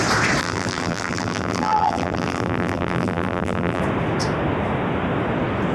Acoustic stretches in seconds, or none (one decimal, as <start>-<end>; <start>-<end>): 0.0-0.4; 3.8-5.7